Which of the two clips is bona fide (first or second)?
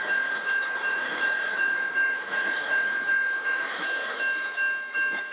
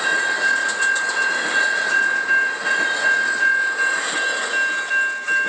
second